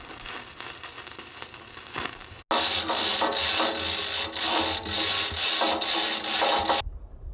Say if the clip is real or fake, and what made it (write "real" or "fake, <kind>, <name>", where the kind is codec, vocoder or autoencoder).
real